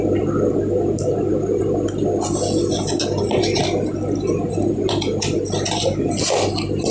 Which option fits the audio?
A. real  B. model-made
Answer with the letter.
A